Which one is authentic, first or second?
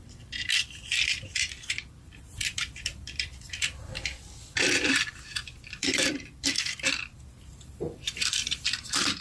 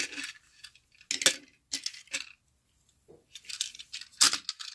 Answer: second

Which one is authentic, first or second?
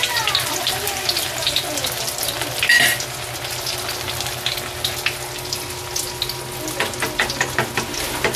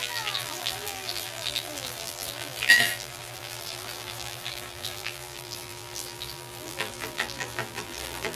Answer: first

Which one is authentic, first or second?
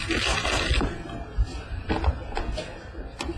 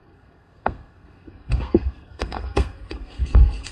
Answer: first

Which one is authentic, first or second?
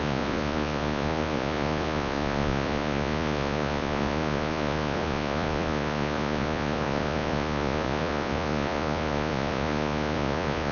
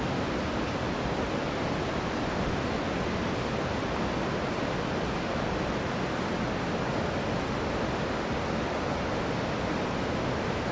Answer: second